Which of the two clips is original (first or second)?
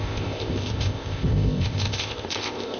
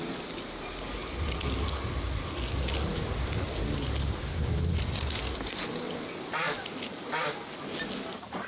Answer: second